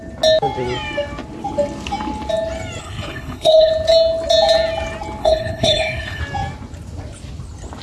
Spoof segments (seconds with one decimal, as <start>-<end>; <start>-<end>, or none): 2.8-3.7; 5.2-6.2